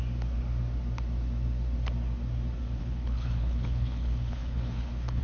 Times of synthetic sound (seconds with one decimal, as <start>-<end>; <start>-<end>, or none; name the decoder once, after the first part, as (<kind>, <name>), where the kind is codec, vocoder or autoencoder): 2.8-5.2 (codec, HILCodec)